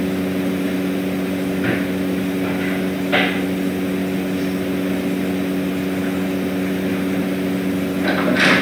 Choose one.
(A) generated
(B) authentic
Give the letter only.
B